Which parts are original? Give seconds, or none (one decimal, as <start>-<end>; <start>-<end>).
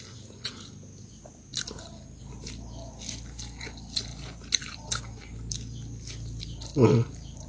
0.0-7.5